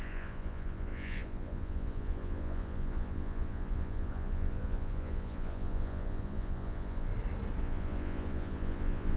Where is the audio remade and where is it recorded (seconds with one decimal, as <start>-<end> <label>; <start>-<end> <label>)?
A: 0.0-7.1 remade; 7.1-7.6 recorded; 7.6-9.2 remade